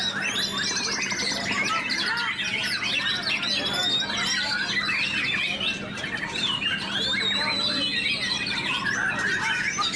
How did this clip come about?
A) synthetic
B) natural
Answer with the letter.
B